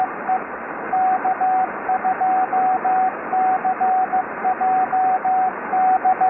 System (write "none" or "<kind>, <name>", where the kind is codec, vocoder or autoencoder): none